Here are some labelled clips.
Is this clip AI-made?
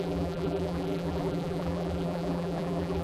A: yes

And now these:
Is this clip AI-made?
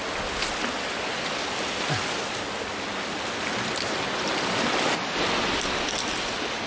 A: no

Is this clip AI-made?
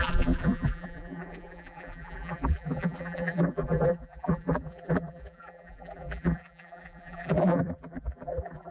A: yes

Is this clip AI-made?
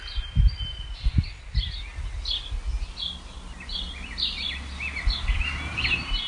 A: no